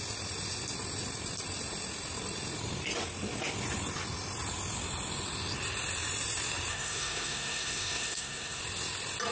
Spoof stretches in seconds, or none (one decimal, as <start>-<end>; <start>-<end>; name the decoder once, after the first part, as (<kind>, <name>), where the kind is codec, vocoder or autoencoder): 6.7-8.6 (codec, SNAC)